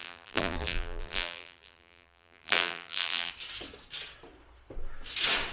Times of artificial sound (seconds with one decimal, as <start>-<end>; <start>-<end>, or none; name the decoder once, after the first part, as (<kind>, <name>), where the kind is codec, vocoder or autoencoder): 0.0-3.3 (vocoder, BigVGAN v2)